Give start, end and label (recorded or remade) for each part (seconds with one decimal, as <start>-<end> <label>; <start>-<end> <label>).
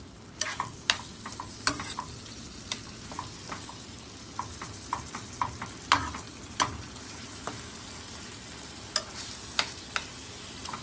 0.0-10.8 recorded